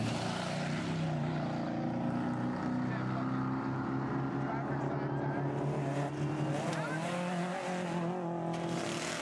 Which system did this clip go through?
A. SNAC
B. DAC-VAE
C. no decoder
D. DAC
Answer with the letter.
C